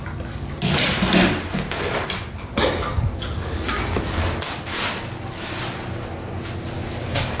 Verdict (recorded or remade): recorded